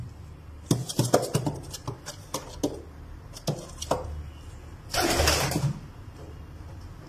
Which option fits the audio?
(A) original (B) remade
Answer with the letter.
A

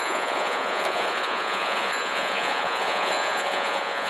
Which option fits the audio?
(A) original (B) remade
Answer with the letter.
B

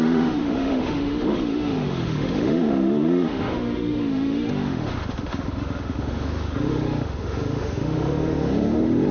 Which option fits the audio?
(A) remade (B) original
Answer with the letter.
A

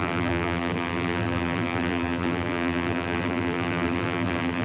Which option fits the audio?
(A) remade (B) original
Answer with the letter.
A